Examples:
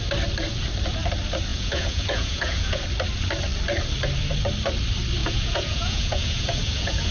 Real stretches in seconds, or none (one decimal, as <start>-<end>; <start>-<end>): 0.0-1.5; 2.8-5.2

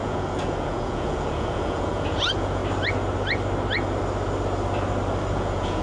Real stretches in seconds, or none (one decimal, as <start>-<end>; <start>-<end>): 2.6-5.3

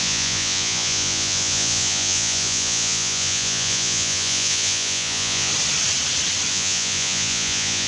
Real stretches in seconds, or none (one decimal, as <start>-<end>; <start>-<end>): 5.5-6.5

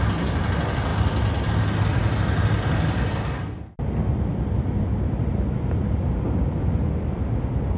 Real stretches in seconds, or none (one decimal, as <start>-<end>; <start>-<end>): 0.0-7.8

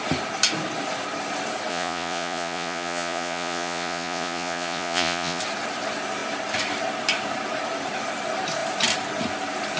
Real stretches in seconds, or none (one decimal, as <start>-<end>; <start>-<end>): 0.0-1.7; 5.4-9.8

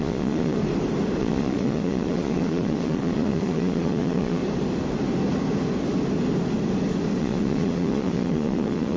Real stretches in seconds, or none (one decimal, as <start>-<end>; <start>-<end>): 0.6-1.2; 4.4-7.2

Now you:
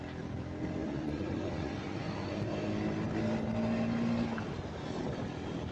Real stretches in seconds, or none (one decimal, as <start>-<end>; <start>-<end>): 0.0-0.8; 2.5-5.7